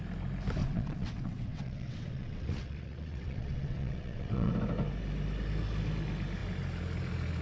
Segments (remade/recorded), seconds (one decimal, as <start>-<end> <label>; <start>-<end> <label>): 0.0-0.6 recorded; 0.6-4.5 remade; 4.5-7.4 recorded